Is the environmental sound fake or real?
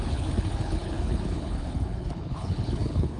fake